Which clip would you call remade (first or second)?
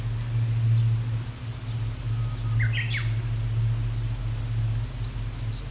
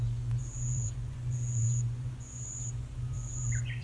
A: second